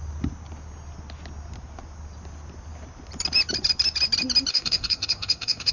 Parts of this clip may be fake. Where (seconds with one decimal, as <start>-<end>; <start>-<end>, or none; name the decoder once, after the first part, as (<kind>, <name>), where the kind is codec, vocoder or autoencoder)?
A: 4.5-5.7 (codec, DAC)